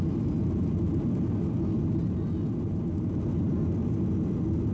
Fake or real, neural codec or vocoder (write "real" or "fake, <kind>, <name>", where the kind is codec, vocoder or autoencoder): real